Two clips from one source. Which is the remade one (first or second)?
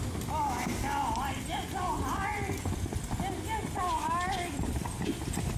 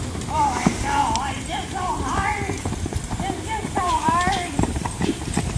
second